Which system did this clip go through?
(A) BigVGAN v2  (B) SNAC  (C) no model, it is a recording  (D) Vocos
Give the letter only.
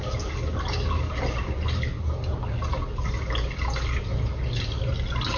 C